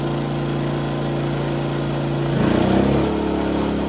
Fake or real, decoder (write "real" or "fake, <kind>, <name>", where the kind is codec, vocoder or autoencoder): real